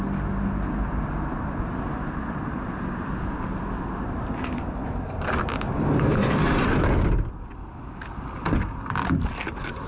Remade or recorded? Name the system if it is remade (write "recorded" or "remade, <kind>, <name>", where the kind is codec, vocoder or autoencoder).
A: recorded